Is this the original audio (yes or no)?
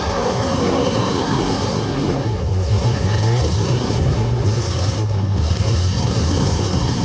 no